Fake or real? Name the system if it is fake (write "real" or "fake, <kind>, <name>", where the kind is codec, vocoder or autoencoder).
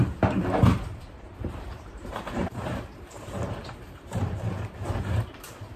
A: fake, vocoder, BigVGAN v2